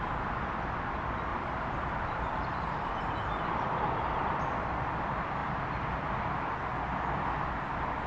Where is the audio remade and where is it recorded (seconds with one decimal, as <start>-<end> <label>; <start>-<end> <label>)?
0.0-1.3 recorded; 1.3-3.8 remade; 3.8-5.4 recorded; 5.4-6.0 remade; 6.0-8.1 recorded